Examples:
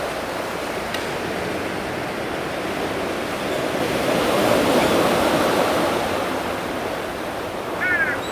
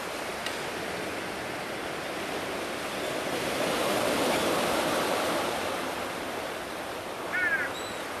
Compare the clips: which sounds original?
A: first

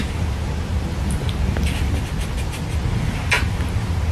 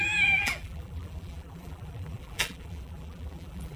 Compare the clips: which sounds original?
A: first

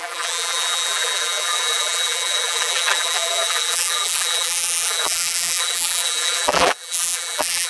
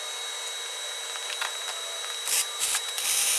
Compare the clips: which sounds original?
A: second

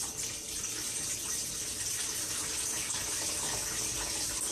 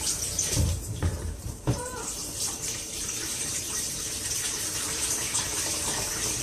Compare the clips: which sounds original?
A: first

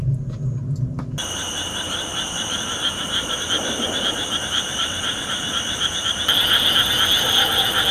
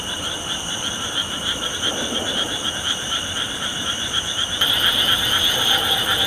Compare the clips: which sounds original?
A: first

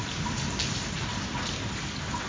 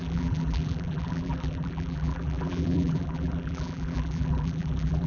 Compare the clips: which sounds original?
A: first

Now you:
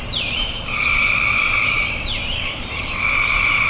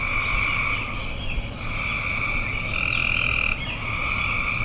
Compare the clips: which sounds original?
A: second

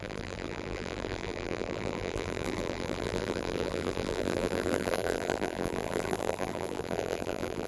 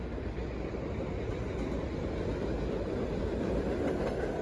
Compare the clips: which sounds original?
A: second